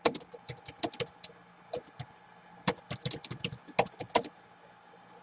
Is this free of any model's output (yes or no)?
yes